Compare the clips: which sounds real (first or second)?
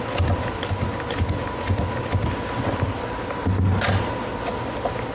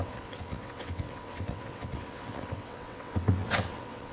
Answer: first